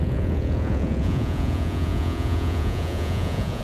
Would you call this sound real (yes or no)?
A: no